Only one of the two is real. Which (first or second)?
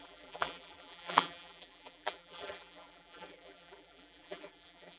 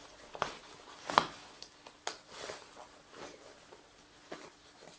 second